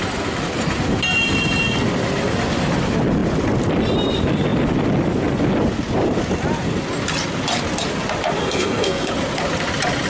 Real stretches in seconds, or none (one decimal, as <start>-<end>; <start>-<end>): 0.0-8.4; 9.1-10.1